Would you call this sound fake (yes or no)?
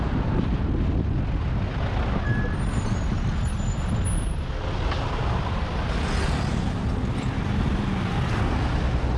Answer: no